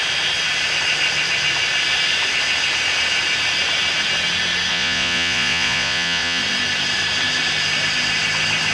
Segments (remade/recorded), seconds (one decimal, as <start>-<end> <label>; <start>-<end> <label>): 0.0-4.7 recorded; 4.7-6.4 remade; 6.4-8.7 recorded